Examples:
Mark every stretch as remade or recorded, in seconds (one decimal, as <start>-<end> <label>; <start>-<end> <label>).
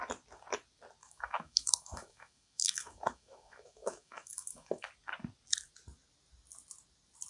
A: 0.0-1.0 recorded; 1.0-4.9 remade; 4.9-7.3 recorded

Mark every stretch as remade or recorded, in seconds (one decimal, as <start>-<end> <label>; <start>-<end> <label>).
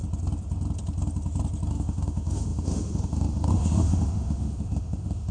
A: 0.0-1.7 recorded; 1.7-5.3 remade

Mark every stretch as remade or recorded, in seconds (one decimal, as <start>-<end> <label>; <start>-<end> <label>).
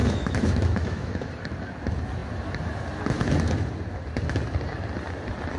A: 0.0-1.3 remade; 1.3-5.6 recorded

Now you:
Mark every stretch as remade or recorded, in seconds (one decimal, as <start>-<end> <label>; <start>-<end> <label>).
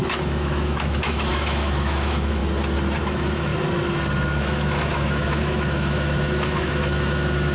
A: 0.0-2.4 remade; 2.4-3.0 recorded; 3.0-3.5 remade; 3.5-4.4 recorded; 4.4-7.5 remade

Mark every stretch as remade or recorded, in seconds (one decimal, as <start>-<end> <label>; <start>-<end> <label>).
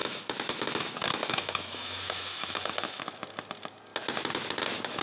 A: 0.0-3.0 remade; 3.0-5.0 recorded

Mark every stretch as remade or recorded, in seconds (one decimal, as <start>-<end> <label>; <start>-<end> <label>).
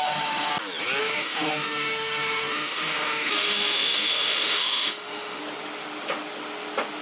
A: 0.0-0.5 remade; 0.5-1.0 recorded; 1.0-5.4 remade; 5.4-7.0 recorded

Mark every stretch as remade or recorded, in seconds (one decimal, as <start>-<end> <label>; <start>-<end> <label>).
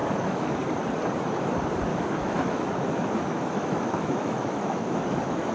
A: 0.0-0.6 remade; 0.6-1.9 recorded; 1.9-5.5 remade